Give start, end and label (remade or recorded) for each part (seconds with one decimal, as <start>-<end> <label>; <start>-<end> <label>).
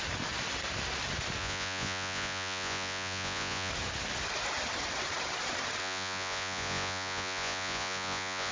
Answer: 0.0-1.4 recorded; 1.4-3.7 remade; 3.7-5.8 recorded; 5.8-8.5 remade